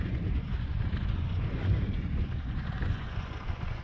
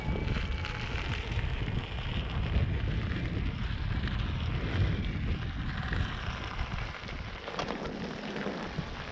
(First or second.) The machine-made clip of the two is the first